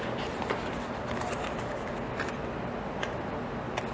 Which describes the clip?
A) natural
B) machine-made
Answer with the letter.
A